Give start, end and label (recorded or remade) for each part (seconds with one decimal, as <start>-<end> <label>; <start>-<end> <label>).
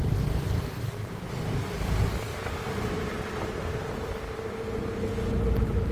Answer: 0.0-1.4 remade; 1.4-2.3 recorded; 2.3-2.9 remade; 2.9-5.9 recorded